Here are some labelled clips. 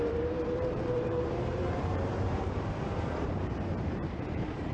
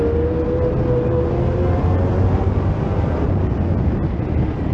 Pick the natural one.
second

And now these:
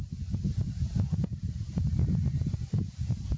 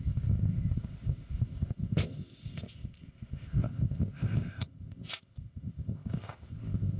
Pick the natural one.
first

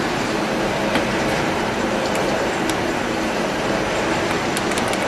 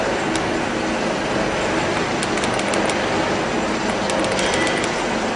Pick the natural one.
second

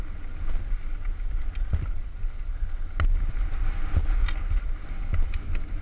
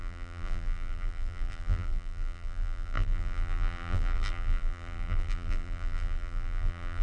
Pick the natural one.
first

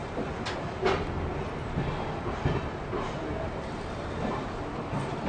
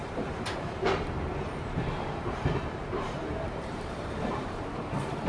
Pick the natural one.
first